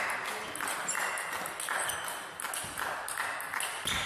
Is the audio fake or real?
real